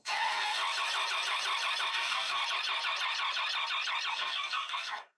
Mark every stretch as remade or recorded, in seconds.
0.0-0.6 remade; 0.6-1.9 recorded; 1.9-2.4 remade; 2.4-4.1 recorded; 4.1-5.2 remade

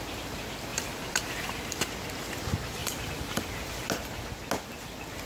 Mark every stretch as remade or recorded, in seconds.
0.0-0.7 recorded; 0.7-1.9 remade; 1.9-2.8 recorded; 2.8-3.7 remade; 3.7-5.3 recorded

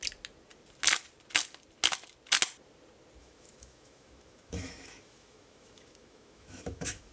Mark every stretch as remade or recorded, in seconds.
0.0-3.2 recorded; 3.2-7.1 remade

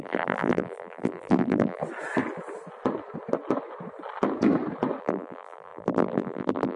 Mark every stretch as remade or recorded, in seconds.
0.0-1.8 remade; 1.8-5.0 recorded; 5.0-6.8 remade